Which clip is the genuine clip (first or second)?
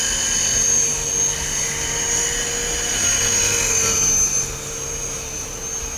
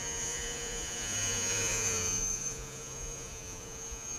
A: first